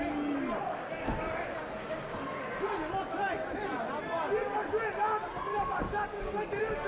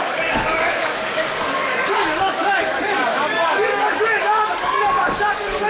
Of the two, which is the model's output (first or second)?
second